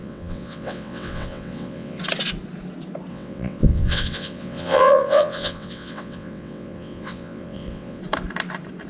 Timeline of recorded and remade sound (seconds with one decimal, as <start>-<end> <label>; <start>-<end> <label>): 0.0-2.0 remade; 2.0-3.1 recorded; 3.1-8.0 remade; 8.0-8.9 recorded